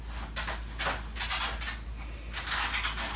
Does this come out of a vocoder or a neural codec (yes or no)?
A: no